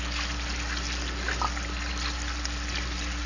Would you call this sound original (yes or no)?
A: yes